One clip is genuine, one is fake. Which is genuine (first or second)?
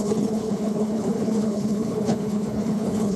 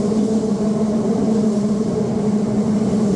second